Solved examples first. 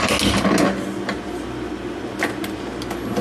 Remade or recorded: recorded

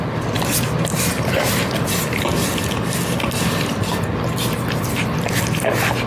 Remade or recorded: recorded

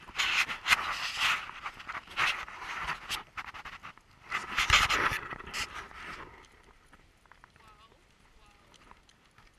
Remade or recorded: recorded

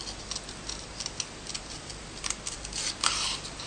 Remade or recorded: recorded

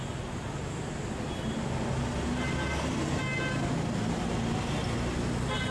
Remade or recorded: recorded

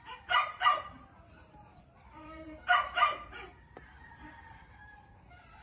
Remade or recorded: remade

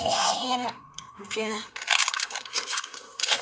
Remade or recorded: remade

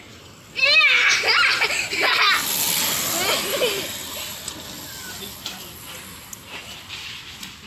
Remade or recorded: recorded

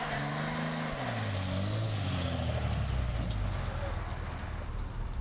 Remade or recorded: recorded